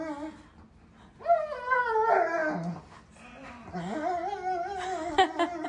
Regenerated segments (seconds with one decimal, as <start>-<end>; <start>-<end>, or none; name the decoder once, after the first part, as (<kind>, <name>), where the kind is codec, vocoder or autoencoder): none